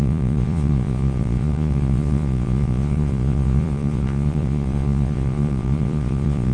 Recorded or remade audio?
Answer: remade